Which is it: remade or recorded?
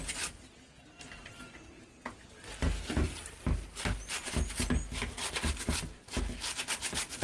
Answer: recorded